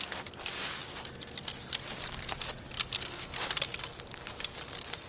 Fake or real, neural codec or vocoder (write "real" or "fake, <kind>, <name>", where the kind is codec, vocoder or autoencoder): real